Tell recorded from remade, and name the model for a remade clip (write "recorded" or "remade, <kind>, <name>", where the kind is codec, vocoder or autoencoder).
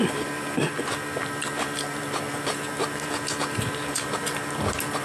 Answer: remade, vocoder, BigVGAN v2